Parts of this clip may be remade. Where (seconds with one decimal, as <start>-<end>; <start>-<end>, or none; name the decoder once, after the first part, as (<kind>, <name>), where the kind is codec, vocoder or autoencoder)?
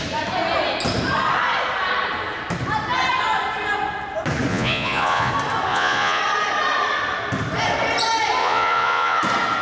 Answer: 4.5-5.3 (vocoder, Vocos); 5.7-6.2; 8.4-9.2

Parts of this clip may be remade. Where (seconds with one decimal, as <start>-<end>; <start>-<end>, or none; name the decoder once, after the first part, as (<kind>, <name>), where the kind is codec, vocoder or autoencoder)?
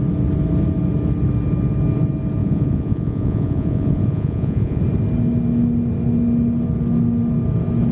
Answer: 2.4-4.8 (vocoder, Vocos)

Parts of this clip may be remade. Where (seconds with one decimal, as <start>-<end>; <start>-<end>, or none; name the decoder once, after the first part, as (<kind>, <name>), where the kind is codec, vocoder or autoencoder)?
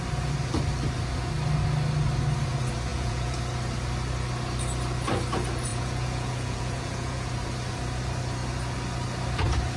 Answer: 2.9-3.4 (vocoder, Vocos); 5.7-7.3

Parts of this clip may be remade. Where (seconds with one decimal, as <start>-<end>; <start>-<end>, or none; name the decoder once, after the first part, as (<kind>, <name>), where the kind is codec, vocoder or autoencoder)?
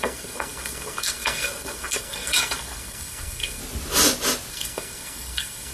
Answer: 0.0-3.6 (codec, SNAC); 4.5-5.7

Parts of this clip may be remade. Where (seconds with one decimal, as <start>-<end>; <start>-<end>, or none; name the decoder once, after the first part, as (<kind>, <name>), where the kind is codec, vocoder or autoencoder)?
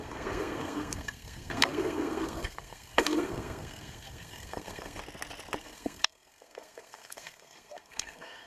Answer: 0.0-5.0 (codec, SNAC); 5.6-8.5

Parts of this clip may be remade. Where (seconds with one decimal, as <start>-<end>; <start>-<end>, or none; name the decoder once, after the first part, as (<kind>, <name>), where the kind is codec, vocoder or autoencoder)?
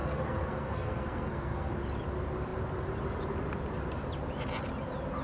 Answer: 0.0-1.7 (codec, SNAC)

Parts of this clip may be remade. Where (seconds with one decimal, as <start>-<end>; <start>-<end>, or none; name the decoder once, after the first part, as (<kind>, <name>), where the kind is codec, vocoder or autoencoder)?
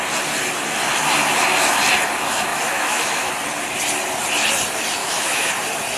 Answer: 2.5-3.3 (autoencoder, DAC-VAE); 5.0-5.5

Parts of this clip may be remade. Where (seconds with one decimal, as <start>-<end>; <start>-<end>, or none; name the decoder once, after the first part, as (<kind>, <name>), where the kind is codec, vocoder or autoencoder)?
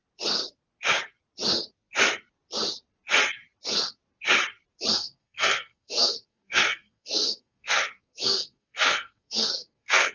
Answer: 4.9-10.1 (codec, SNAC)